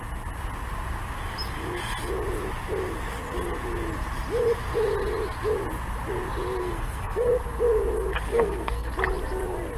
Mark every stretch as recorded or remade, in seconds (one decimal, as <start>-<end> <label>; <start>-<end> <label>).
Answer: 0.0-6.6 recorded; 6.6-7.3 remade; 7.3-8.3 recorded; 8.3-8.9 remade; 8.9-9.8 recorded